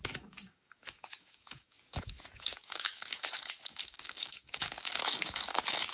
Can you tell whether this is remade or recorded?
remade